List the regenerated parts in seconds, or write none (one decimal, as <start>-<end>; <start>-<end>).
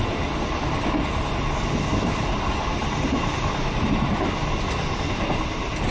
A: 2.8-3.7